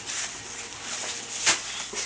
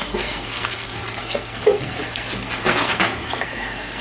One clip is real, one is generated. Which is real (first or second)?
first